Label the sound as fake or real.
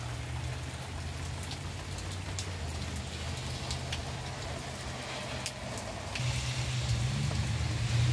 real